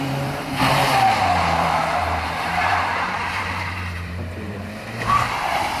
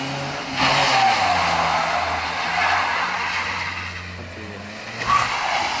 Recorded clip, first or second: second